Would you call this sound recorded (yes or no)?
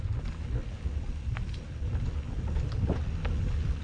yes